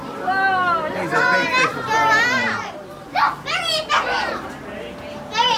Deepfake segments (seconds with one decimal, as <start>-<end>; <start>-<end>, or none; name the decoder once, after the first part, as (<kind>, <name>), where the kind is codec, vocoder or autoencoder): none